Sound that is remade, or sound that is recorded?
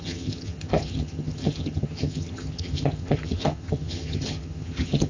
remade